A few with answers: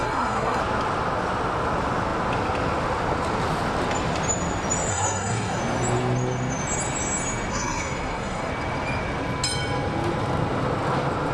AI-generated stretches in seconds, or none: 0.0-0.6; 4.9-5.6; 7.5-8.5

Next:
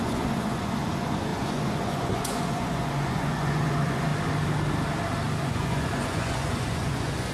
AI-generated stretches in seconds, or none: 0.0-4.1; 5.4-7.3

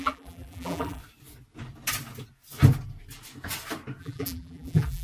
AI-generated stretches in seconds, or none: 0.0-1.0; 4.0-5.0

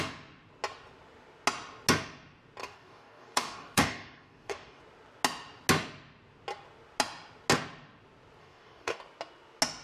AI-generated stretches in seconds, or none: 2.6-4.8; 8.4-9.0

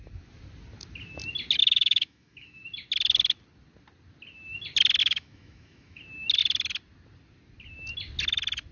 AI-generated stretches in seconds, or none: 1.6-2.6; 5.0-6.0